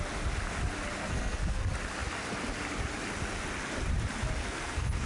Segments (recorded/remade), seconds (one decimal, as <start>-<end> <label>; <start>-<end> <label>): 0.0-1.0 recorded; 1.0-1.6 remade; 1.6-4.4 recorded; 4.4-5.1 remade